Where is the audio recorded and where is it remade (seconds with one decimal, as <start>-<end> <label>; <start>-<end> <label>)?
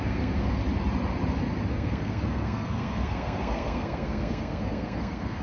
0.0-0.6 remade; 0.6-1.7 recorded; 1.7-5.4 remade